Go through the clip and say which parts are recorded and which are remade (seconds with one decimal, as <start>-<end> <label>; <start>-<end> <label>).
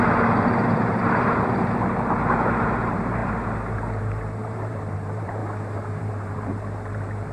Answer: 0.0-5.4 remade; 5.4-6.0 recorded; 6.0-7.3 remade